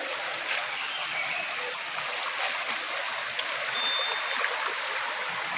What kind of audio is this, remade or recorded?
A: recorded